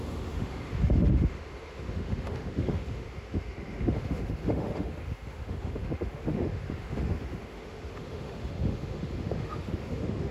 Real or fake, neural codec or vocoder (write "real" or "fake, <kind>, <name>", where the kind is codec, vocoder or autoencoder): fake, autoencoder, DAC-VAE